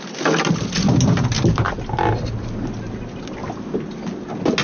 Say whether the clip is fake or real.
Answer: real